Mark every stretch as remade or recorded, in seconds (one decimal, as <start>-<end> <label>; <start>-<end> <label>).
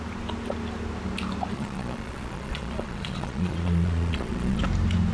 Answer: 0.0-1.5 recorded; 1.5-4.6 remade; 4.6-5.1 recorded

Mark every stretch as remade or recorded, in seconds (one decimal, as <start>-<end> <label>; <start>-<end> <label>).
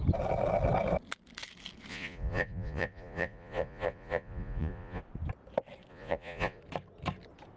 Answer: 0.0-1.9 recorded; 1.9-5.0 remade; 5.0-5.9 recorded; 5.9-6.6 remade; 6.6-7.6 recorded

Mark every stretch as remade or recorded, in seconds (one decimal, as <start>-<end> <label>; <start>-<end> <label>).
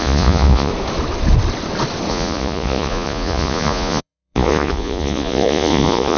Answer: 0.0-0.7 remade; 0.7-2.1 recorded; 2.1-6.2 remade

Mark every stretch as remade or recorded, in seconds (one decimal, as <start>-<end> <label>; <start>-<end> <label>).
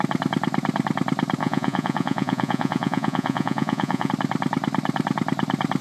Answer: 0.0-1.4 recorded; 1.4-4.1 remade; 4.1-5.8 recorded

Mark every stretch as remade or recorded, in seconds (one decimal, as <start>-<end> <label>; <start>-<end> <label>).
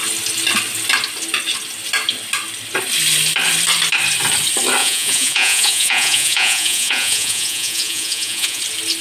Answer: 0.0-4.8 recorded; 4.8-8.6 remade; 8.6-9.0 recorded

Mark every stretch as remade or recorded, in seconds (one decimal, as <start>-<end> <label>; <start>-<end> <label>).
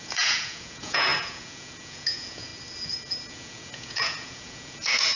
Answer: 0.0-2.5 remade; 2.5-3.3 recorded; 3.3-5.2 remade